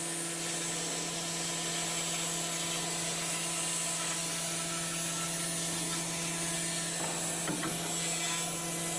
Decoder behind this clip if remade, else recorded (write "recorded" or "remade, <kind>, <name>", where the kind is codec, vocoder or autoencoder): recorded